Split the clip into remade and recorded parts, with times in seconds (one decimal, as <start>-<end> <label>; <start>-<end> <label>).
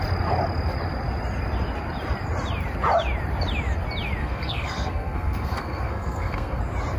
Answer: 0.0-4.2 recorded; 4.2-6.6 remade; 6.6-7.0 recorded